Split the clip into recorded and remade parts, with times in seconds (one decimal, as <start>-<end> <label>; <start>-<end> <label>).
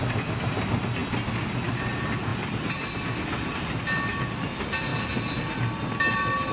0.0-6.5 recorded